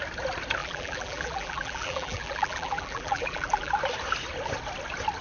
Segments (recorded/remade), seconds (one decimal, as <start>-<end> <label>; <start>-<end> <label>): 0.0-0.6 recorded; 0.6-3.7 remade; 3.7-5.2 recorded